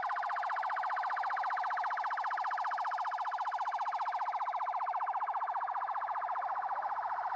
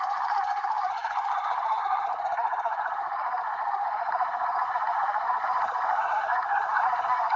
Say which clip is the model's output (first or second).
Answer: second